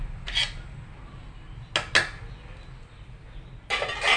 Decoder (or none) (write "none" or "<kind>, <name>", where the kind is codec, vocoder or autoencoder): none